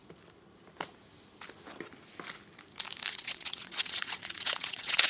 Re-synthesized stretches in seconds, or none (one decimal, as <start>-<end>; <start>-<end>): 3.1-5.1